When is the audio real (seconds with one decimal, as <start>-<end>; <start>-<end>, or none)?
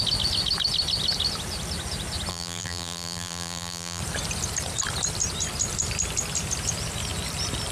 0.0-2.3; 4.0-7.7